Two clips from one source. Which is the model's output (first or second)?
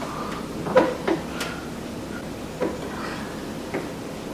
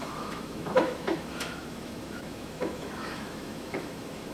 second